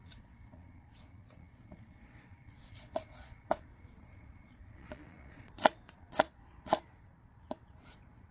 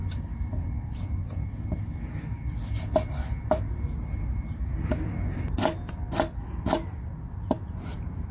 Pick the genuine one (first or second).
second